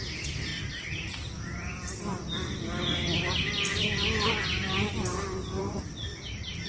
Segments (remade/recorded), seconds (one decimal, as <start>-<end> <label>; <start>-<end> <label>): 0.0-6.7 recorded